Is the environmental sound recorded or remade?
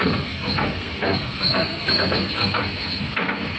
remade